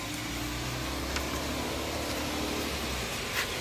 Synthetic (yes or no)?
no